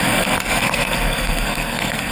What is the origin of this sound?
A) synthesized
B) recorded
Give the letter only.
A